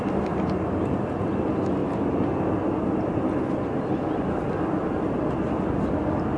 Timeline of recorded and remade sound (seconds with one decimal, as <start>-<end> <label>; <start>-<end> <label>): 0.0-6.4 recorded